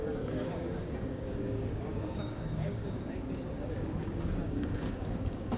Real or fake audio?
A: fake